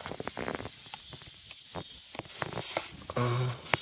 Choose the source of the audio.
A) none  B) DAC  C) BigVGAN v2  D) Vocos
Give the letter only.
A